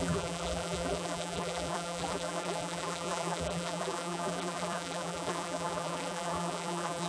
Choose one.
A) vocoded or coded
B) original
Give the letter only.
A